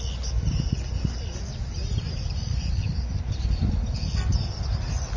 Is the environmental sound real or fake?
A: real